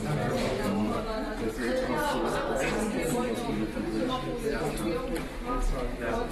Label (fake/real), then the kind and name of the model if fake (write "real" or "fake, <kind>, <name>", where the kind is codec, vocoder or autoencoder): real